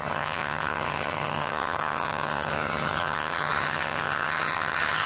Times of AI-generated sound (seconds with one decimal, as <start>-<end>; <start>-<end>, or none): 0.0-5.1